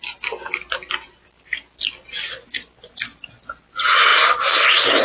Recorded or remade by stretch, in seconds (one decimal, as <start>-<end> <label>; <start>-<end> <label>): 0.0-5.0 recorded